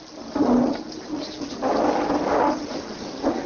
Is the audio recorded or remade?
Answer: recorded